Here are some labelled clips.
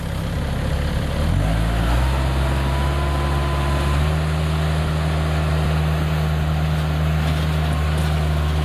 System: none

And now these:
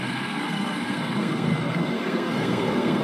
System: codec, SNAC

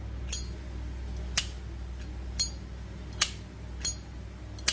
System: none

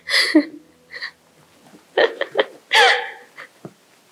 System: none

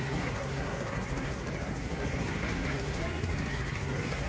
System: codec, SNAC